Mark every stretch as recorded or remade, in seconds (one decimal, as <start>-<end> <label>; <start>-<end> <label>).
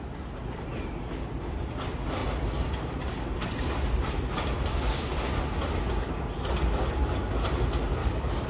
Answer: 0.0-8.0 recorded; 8.0-8.5 remade